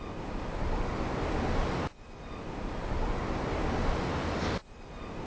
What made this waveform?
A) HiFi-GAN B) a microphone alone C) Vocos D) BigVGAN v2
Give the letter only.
B